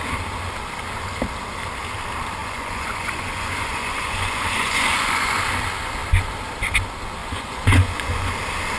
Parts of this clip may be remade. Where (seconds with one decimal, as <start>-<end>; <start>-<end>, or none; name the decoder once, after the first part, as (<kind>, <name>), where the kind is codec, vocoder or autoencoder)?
2.4-5.4 (vocoder, Vocos); 7.2-8.3